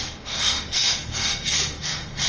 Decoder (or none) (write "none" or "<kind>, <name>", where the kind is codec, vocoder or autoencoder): codec, SNAC